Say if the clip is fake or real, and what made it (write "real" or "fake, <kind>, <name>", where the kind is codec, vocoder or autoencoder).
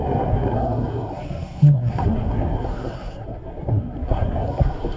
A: fake, codec, SNAC